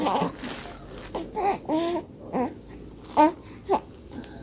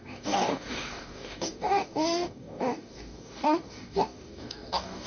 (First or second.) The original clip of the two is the first